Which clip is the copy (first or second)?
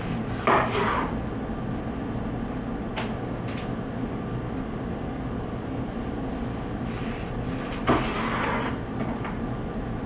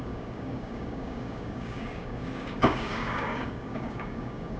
second